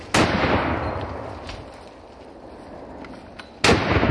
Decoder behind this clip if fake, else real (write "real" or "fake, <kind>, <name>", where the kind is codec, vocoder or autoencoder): real